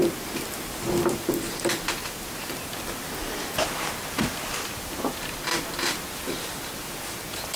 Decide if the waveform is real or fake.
fake